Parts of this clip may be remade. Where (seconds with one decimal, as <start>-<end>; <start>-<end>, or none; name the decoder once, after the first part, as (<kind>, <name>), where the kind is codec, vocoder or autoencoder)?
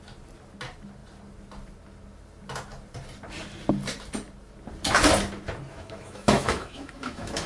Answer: 5.7-7.5 (autoencoder, DAC-VAE)